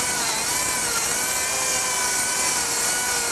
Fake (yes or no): no